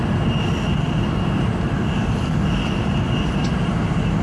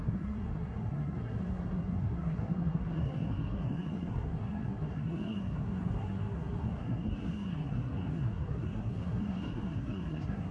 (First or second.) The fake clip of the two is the second